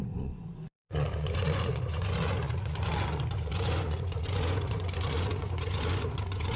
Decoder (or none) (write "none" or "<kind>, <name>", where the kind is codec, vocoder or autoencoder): vocoder, Vocos